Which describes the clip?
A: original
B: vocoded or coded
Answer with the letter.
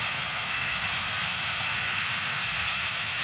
B